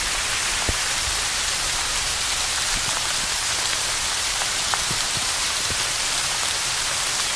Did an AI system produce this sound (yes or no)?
yes